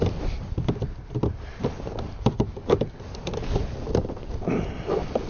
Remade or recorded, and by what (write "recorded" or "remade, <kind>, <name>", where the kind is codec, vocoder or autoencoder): recorded